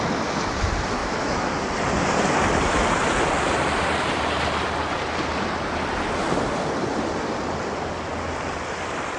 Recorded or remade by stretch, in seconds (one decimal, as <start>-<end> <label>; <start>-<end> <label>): 0.0-1.0 recorded; 1.0-1.5 remade; 1.5-9.2 recorded